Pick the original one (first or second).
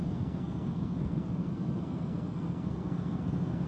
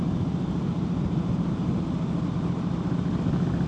second